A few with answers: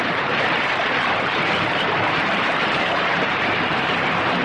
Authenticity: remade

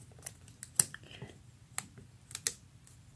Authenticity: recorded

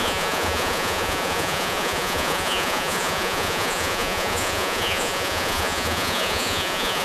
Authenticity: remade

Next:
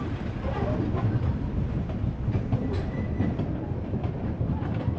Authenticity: remade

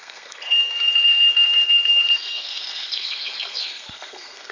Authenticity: remade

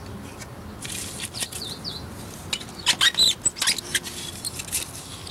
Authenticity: recorded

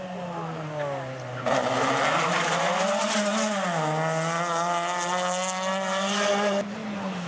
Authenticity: recorded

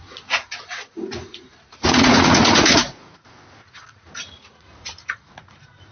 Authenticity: remade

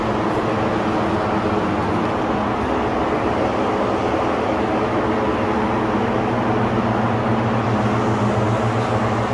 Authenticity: recorded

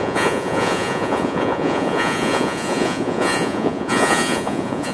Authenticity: remade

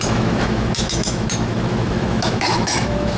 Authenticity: remade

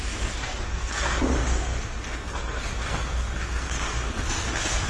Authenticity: remade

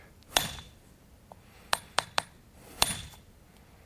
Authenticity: remade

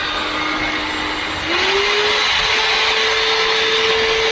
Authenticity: recorded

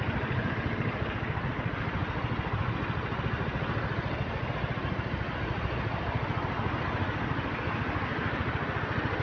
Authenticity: recorded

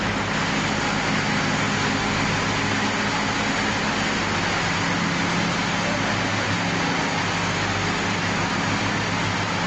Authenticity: recorded